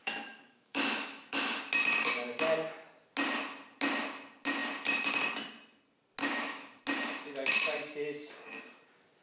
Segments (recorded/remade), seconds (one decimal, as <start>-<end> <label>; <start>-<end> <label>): 0.0-1.6 remade; 1.6-6.2 recorded; 6.2-6.8 remade; 6.8-9.2 recorded